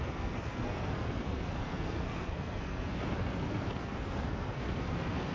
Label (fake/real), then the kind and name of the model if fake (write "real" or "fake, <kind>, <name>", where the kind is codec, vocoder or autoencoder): fake, codec, SNAC